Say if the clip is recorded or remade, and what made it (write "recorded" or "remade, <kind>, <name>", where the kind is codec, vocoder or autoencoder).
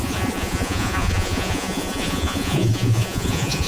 remade, vocoder, Vocos